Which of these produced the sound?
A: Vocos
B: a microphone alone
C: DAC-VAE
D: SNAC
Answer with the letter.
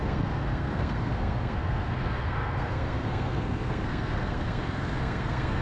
D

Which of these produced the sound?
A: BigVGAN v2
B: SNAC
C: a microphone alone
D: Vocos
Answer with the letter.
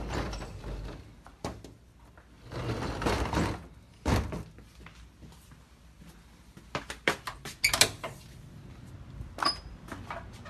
C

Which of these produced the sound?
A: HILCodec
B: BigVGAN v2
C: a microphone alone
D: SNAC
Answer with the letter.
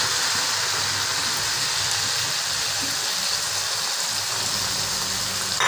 C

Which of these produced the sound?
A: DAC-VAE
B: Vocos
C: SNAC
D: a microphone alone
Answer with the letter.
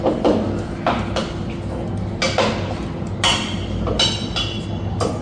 D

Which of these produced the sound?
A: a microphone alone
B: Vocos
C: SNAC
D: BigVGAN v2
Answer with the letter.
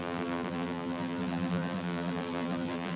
D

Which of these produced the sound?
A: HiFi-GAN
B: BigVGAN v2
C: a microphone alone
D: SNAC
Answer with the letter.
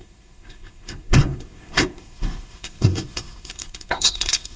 D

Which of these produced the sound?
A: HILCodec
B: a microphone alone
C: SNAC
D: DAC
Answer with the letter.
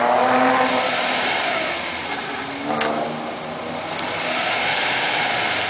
B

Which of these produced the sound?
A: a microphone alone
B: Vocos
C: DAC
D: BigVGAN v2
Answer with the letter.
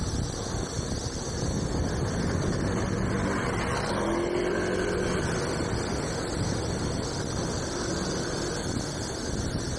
A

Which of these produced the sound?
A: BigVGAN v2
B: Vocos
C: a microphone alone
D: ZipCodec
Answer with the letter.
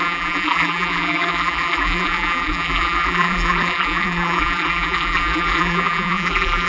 A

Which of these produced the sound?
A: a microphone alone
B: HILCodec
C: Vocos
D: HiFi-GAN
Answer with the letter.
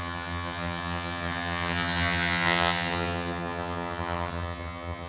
D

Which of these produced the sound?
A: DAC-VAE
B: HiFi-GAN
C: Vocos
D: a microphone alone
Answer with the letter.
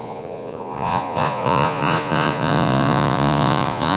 C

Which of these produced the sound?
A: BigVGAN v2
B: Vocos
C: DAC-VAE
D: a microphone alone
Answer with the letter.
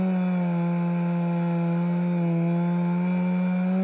D